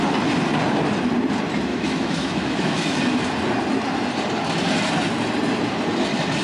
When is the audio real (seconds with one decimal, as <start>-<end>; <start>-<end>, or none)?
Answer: 0.0-1.7; 3.0-6.4